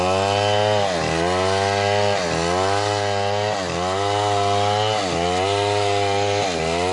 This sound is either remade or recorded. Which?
recorded